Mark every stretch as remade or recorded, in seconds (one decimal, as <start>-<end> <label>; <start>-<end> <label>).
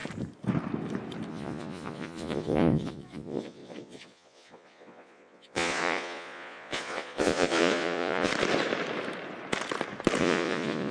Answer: 0.0-1.3 recorded; 1.3-8.3 remade; 8.3-10.2 recorded; 10.2-10.9 remade